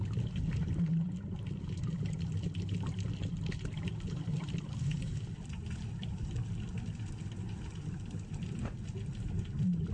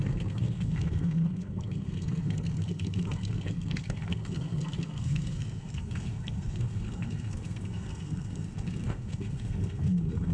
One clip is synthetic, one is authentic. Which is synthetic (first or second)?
second